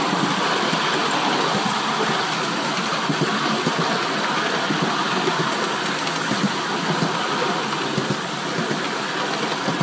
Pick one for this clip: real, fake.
real